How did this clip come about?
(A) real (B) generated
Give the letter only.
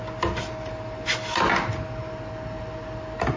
A